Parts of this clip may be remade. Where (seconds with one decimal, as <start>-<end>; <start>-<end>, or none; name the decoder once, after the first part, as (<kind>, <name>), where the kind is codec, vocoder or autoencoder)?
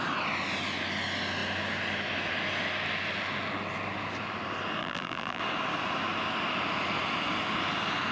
4.8-5.4 (vocoder, BigVGAN v2)